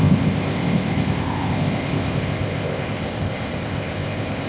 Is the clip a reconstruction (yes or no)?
yes